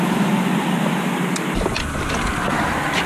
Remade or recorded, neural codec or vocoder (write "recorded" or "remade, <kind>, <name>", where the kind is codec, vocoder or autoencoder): recorded